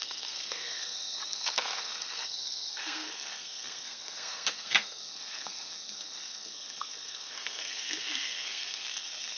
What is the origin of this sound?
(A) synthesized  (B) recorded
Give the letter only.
A